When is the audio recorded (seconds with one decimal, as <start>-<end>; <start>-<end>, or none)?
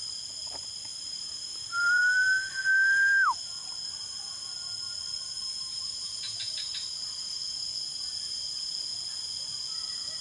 0.0-0.9; 2.0-5.4; 7.4-10.2